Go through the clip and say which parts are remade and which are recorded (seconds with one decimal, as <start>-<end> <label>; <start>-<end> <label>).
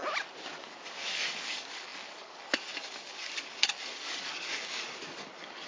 0.0-0.6 recorded; 0.6-5.7 remade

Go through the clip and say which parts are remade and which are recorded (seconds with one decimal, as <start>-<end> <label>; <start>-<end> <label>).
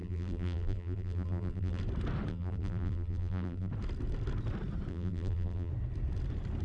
0.0-1.8 remade; 1.8-2.3 recorded; 2.3-3.7 remade; 3.7-4.9 recorded; 4.9-5.7 remade; 5.7-6.6 recorded